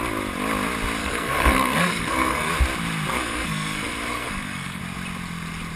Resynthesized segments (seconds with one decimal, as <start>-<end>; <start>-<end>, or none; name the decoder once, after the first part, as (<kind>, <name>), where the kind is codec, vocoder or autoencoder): 1.0-2.5 (codec, SNAC); 3.1-4.8